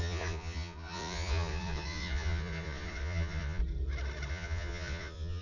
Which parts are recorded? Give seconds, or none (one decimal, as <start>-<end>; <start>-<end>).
3.6-4.3